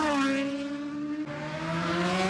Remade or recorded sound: recorded